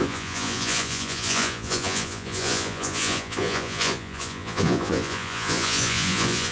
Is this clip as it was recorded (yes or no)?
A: no